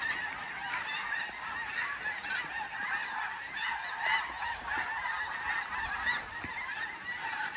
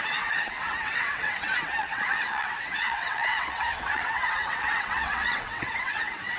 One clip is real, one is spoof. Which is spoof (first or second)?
second